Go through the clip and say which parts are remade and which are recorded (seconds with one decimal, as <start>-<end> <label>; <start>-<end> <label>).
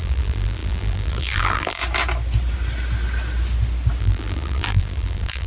0.0-1.8 remade; 1.8-4.0 recorded; 4.0-5.5 remade